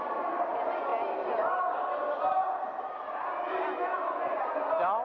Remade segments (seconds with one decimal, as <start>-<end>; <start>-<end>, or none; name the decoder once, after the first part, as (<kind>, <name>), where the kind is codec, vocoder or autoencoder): none